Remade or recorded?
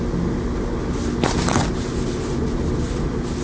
recorded